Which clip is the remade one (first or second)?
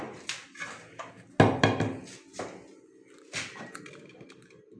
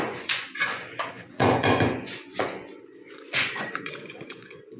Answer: second